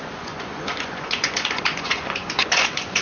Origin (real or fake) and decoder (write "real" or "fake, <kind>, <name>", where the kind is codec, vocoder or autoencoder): fake, vocoder, Vocos